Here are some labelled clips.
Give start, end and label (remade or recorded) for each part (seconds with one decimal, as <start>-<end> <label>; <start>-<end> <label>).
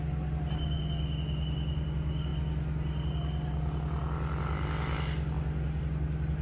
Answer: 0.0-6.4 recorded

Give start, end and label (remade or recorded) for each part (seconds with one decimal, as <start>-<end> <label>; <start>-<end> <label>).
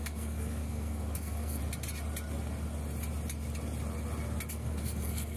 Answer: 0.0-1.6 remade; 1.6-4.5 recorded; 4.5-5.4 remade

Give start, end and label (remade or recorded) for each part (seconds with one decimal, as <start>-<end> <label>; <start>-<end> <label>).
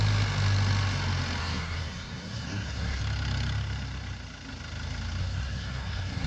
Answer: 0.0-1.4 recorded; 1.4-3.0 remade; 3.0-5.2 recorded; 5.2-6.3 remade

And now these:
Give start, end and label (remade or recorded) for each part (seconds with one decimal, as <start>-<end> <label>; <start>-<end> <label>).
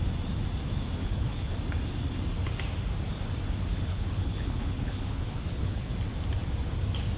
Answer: 0.0-1.0 recorded; 1.0-1.6 remade; 1.6-3.7 recorded; 3.7-5.9 remade; 5.9-7.2 recorded